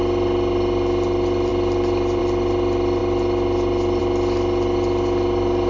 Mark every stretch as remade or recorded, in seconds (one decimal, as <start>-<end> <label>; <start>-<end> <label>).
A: 0.0-5.7 recorded